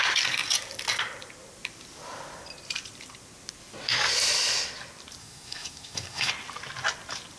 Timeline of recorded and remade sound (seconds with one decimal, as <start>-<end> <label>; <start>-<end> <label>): 0.0-5.2 recorded; 5.2-6.3 remade; 6.3-7.4 recorded